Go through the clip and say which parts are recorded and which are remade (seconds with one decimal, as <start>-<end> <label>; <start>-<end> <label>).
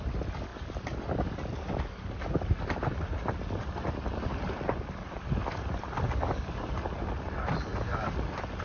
0.0-8.6 recorded